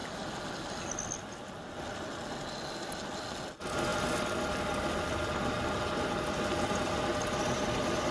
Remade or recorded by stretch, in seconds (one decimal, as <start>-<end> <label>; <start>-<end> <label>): 0.0-8.1 recorded